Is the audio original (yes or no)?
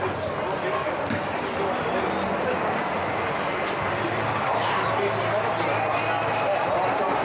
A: yes